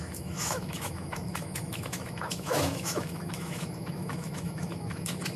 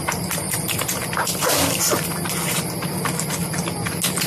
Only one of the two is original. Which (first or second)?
second